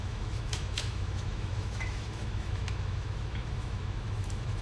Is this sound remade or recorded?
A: remade